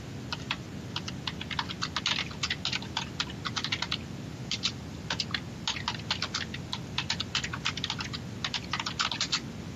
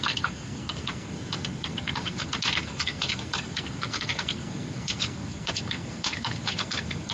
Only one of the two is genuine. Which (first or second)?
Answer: first